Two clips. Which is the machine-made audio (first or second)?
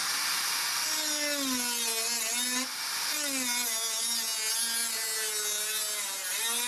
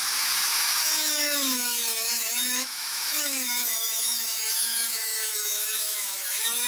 second